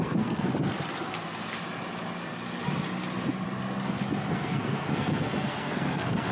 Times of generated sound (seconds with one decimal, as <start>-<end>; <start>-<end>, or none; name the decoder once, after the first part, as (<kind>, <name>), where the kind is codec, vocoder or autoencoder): 0.0-0.5 (codec, SNAC); 4.3-6.3